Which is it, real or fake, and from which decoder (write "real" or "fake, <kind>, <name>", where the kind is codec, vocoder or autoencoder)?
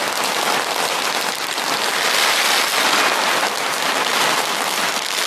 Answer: real